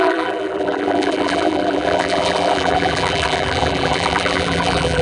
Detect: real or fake fake